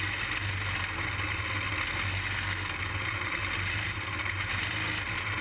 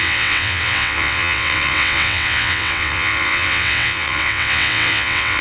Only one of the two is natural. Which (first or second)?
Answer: first